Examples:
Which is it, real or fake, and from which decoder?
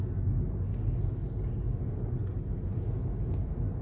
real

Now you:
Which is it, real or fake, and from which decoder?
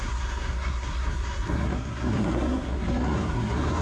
fake, codec, SNAC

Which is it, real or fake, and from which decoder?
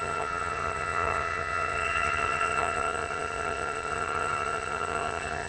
fake, vocoder, HiFi-GAN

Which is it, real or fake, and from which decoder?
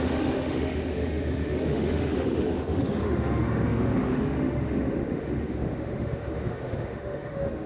fake, autoencoder, DAC-VAE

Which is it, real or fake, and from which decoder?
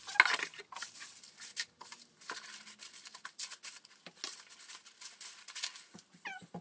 real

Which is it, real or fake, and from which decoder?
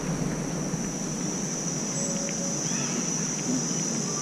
real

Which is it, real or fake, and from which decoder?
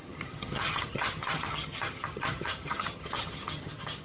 fake, vocoder, HiFi-GAN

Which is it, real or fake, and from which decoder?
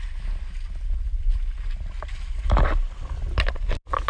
real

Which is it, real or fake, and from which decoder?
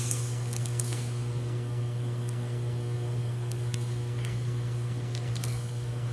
fake, codec, SNAC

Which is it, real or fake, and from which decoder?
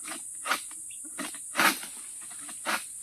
real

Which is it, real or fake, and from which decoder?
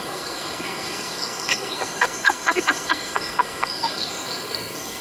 fake, codec, SNAC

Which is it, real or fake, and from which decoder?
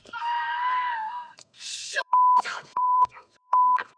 fake, codec, SNAC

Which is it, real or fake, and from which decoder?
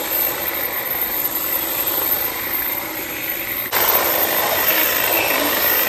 fake, vocoder, BigVGAN v2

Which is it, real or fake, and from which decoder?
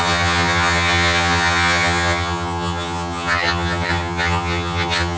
fake, vocoder, HiFi-GAN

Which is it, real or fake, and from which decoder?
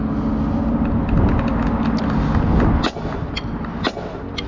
real